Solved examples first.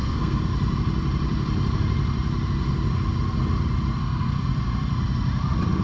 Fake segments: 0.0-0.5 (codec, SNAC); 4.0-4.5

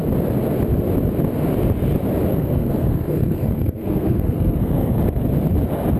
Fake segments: 2.3-5.0 (codec, SNAC)

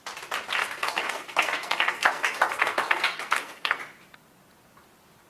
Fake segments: 0.6-3.8 (codec, SNAC)

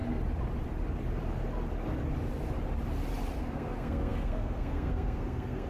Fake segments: 3.4-5.7 (codec, SNAC)

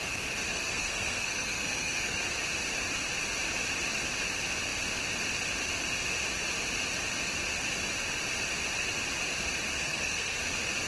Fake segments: 0.5-2.2 (codec, SNAC); 9.7-10.4

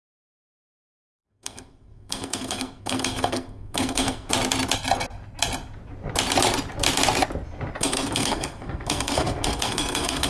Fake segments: 0.0-4.3 (codec, SNAC); 7.8-10.3

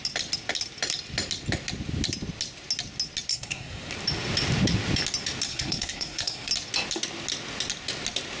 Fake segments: 3.3-3.9 (codec, SNAC); 5.5-6.5